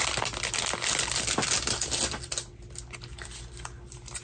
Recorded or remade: recorded